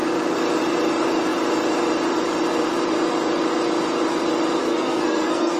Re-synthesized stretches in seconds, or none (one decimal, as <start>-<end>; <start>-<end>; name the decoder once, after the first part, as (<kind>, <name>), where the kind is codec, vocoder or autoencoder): 4.6-5.6 (codec, SNAC)